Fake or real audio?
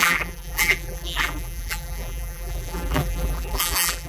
fake